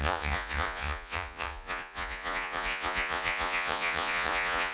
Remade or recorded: remade